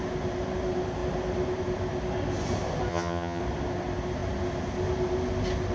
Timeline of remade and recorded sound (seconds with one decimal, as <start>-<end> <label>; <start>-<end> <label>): 0.0-2.9 recorded; 2.9-3.4 remade; 3.4-5.7 recorded